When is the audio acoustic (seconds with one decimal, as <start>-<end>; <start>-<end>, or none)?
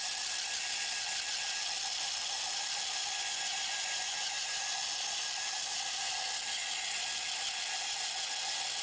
0.0-3.2; 4.6-8.8